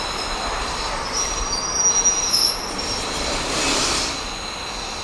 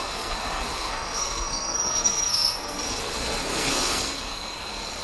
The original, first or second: first